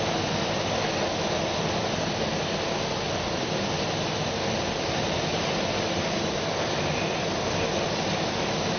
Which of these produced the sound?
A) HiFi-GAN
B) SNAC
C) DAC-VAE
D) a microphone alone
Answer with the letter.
D